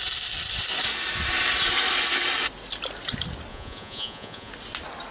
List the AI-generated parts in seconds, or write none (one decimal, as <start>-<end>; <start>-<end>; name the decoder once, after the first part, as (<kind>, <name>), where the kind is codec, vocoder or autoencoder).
3.5-4.5 (vocoder, Vocos)